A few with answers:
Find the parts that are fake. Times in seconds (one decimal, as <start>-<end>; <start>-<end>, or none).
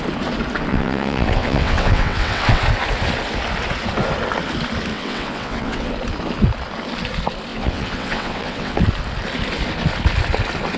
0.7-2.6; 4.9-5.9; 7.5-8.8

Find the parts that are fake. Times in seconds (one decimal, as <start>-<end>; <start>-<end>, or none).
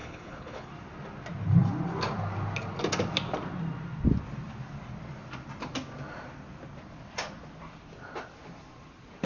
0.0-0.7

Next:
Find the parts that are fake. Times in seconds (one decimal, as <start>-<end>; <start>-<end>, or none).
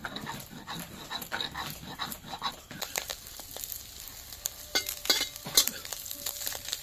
0.0-3.1; 4.5-5.8; 6.3-6.8